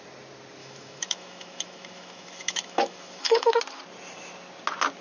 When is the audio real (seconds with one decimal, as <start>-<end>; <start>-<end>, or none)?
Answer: 0.0-0.6; 3.6-5.0